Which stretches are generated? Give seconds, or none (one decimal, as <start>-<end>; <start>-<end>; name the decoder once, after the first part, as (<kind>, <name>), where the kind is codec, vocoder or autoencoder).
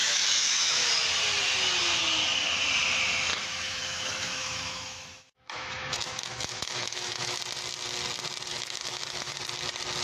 0.0-0.9 (autoencoder, DAC-VAE); 3.3-7.4; 8.5-9.4